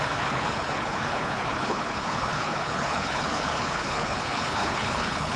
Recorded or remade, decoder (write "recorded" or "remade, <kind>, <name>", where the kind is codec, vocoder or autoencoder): remade, codec, HILCodec